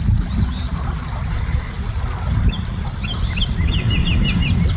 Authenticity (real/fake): real